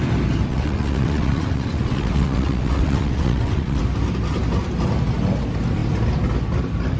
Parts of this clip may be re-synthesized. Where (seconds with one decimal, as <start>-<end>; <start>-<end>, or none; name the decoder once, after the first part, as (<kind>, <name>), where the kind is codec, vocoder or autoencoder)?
0.5-3.8 (vocoder, WaveNeXt)